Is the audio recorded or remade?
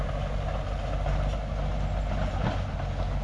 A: recorded